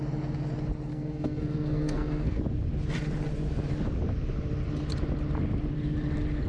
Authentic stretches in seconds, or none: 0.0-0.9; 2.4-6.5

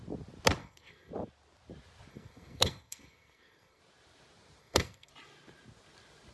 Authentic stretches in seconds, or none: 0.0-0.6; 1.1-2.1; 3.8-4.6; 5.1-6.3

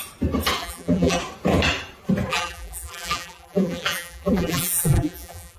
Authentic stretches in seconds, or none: 0.0-0.6; 1.2-2.3